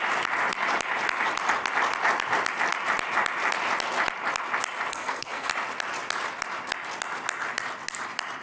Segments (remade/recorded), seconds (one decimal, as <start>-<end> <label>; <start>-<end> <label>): 0.0-4.9 recorded; 4.9-5.5 remade; 5.5-8.4 recorded